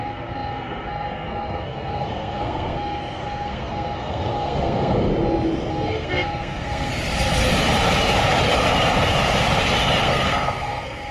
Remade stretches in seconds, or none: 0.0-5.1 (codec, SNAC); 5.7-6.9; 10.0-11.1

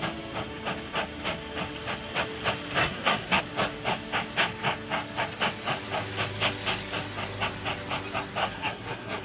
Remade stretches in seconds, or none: 2.8-3.4 (codec, SNAC); 8.4-9.2

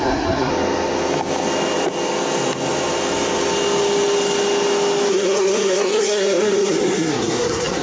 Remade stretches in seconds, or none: 0.0-0.5 (codec, SNAC); 5.1-7.8

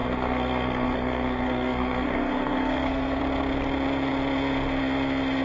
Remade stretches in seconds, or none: 0.0-3.2 (codec, SNAC)